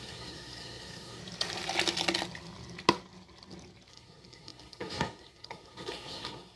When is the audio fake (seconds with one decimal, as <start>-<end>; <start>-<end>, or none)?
0.0-1.2; 3.9-6.6